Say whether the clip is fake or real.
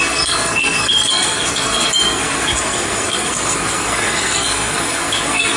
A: fake